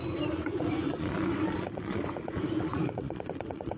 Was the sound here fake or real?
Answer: fake